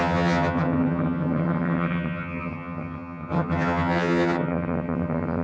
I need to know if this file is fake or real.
fake